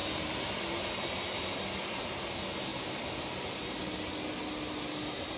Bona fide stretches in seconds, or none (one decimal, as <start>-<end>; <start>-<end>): 0.9-2.7; 3.2-5.4